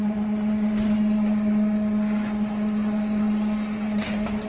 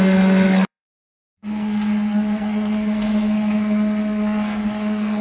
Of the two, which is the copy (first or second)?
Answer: second